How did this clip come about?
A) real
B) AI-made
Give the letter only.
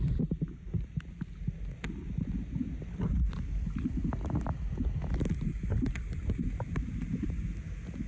A